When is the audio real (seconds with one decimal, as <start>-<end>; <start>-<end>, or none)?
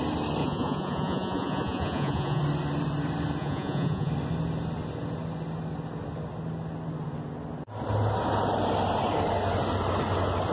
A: 0.0-0.4; 2.4-3.4; 4.1-10.5